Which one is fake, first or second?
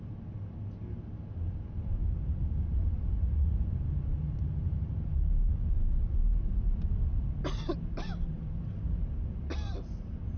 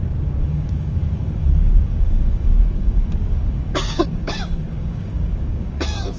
second